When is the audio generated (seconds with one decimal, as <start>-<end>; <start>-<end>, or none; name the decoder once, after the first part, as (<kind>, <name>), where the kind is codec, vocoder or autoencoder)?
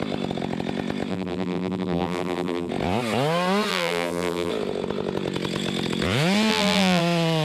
1.1-2.7 (vocoder, BigVGAN v2); 3.7-4.5; 6.5-7.0